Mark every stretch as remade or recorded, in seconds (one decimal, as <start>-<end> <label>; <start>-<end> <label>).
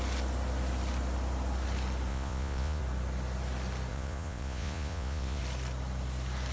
0.0-2.1 recorded; 2.1-2.8 remade; 2.8-3.9 recorded; 3.9-5.4 remade; 5.4-6.5 recorded